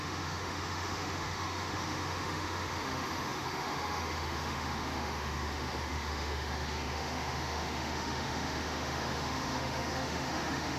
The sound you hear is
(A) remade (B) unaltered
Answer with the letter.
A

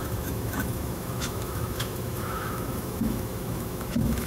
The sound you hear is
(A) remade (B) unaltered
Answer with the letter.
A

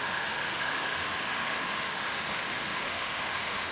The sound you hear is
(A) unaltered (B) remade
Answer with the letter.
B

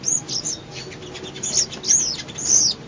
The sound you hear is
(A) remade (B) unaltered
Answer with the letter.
B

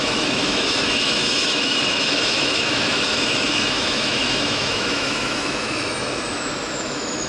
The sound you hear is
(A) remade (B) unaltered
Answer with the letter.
A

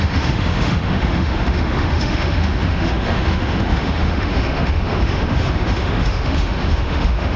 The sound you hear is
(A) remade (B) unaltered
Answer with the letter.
A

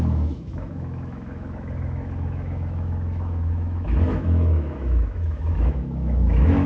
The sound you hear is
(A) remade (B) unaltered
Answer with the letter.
A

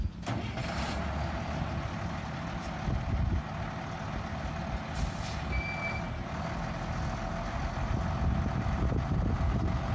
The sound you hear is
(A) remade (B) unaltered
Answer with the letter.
B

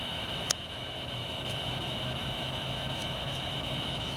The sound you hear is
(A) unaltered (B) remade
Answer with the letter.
B